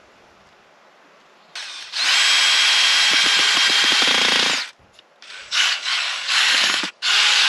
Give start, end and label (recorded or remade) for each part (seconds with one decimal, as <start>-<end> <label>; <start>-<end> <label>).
0.0-5.4 recorded; 5.4-7.5 remade